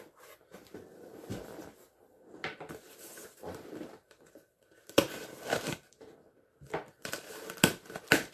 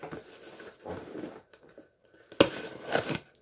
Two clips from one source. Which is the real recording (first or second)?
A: second